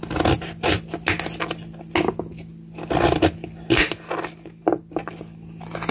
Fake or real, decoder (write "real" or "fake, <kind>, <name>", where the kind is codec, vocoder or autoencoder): real